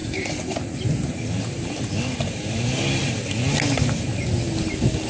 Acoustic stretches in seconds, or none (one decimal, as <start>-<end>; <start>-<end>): 0.0-5.1